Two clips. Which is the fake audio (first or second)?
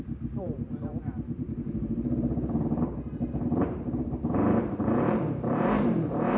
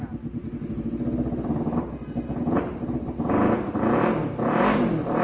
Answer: first